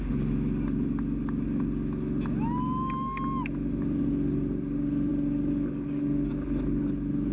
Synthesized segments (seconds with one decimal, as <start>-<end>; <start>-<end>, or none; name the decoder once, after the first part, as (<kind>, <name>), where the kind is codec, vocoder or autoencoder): none

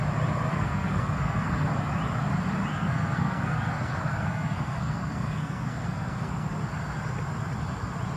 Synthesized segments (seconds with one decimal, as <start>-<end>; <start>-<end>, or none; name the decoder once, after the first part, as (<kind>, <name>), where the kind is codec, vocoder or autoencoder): 0.5-1.7 (codec, SNAC); 2.7-6.5

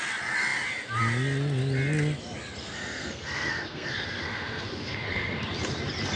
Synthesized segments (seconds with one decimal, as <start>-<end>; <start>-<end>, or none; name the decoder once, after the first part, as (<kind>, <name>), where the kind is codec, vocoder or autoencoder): 2.6-5.4 (codec, SNAC)

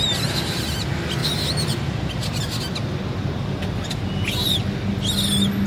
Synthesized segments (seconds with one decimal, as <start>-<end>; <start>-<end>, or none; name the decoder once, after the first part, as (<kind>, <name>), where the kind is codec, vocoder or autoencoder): none

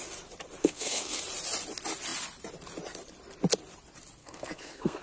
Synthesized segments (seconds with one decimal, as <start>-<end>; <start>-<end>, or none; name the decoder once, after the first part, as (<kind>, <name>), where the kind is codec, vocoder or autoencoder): 0.6-1.2 (codec, SNAC); 4.2-5.0